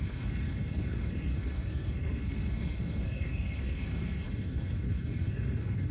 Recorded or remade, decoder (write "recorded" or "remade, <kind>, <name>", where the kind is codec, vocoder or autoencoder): remade, codec, SNAC